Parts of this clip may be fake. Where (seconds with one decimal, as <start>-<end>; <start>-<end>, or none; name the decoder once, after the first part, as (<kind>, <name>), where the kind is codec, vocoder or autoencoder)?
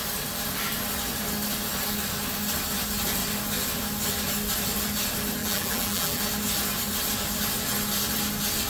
5.4-6.2 (vocoder, BigVGAN v2)